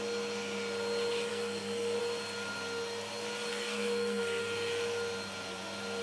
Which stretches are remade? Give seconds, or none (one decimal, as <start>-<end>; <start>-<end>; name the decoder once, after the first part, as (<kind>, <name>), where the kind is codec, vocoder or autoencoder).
1.3-2.0 (codec, SNAC); 3.5-4.4